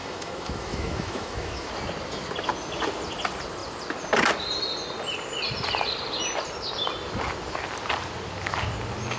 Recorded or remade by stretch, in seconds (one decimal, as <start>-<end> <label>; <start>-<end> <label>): 0.0-1.7 remade; 1.7-9.2 recorded